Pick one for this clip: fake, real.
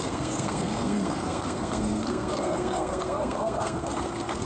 fake